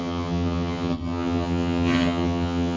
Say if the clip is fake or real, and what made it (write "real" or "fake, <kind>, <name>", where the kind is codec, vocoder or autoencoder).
fake, vocoder, HiFi-GAN